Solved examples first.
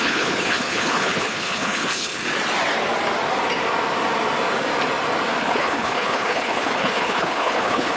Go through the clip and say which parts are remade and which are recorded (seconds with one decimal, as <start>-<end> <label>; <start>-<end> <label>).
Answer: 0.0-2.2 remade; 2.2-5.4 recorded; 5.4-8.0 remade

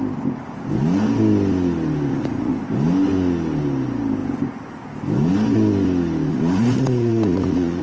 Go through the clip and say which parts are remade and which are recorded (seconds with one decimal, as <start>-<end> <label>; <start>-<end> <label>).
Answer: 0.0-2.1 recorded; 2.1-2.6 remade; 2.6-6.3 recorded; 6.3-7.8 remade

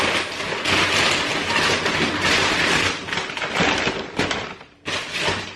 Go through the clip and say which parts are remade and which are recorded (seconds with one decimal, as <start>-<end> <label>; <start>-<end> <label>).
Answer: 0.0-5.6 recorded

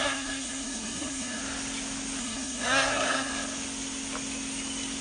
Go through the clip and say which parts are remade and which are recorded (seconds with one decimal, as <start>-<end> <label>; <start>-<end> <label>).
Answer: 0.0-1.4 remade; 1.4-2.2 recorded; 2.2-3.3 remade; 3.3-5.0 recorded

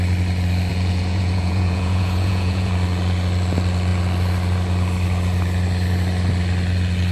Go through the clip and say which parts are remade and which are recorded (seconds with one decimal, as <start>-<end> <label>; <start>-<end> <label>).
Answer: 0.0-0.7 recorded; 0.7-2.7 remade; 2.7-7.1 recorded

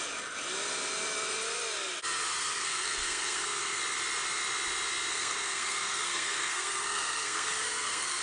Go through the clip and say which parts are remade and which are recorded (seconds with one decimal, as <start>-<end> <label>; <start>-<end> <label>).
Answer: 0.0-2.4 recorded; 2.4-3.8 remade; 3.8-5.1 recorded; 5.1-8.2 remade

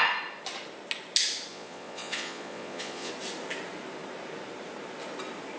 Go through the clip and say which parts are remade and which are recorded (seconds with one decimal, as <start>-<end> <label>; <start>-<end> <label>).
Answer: 0.0-1.5 recorded; 1.5-3.1 remade; 3.1-5.6 recorded

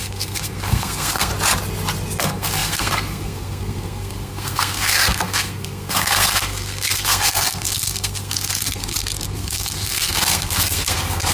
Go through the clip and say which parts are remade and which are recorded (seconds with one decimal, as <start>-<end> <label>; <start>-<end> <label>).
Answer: 0.0-1.3 remade; 1.3-2.2 recorded; 2.2-11.3 remade